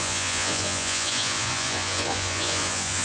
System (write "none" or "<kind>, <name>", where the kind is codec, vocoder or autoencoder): vocoder, Vocos